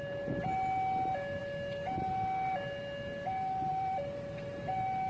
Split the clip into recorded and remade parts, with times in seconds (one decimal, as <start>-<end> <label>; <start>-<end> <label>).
0.0-3.7 recorded; 3.7-5.1 remade